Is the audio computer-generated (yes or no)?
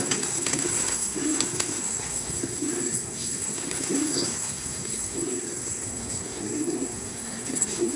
yes